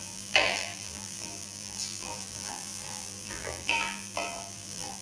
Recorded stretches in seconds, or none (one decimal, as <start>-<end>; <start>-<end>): none